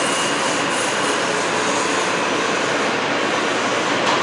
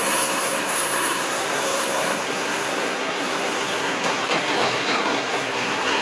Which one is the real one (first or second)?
first